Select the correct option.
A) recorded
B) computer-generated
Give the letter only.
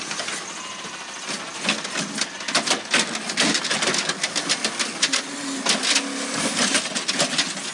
A